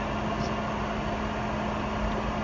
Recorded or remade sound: recorded